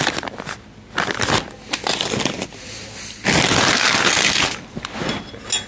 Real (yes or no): yes